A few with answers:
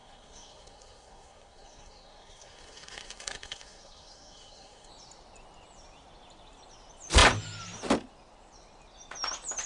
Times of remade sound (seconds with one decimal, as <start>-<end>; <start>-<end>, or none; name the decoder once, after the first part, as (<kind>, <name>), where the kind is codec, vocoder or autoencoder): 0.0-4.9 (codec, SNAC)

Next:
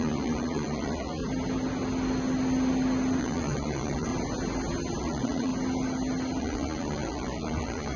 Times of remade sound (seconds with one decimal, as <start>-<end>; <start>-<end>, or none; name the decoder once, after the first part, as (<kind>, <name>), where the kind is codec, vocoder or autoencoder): 0.0-1.2 (vocoder, Vocos); 3.2-4.1; 5.0-5.5; 6.4-8.0

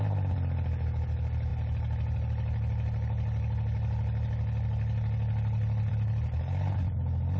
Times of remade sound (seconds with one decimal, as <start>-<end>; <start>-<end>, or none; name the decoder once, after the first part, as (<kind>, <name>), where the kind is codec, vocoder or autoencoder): none

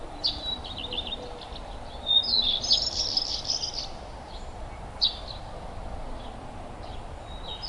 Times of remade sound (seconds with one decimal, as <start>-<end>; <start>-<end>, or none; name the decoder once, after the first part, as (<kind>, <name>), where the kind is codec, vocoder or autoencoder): none

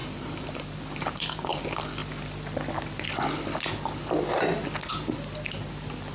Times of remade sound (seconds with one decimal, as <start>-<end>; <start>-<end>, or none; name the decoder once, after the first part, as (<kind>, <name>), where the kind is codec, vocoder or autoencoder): 0.0-1.6 (vocoder, BigVGAN v2)

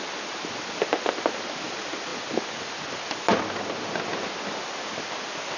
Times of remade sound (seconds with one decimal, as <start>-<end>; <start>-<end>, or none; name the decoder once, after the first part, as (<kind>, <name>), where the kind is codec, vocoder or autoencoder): none